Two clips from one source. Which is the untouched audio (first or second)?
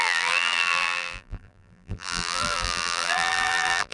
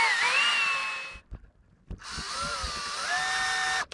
second